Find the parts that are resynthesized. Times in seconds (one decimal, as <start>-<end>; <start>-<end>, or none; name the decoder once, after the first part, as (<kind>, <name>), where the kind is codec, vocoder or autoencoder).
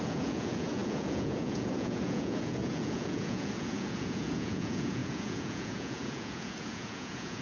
0.0-7.4 (vocoder, Vocos)